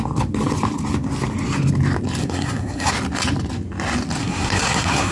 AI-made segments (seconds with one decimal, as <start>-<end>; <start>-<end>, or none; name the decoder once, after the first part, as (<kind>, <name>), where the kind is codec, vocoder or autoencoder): 2.2-2.9 (codec, SNAC); 4.2-5.1